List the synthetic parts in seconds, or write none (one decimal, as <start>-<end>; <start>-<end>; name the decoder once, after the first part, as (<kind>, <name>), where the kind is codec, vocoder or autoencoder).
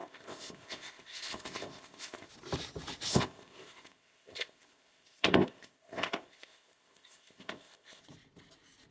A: 0.0-2.3 (codec, ZipCodec); 3.1-8.0